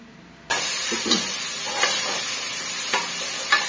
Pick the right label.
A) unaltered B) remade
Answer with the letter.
A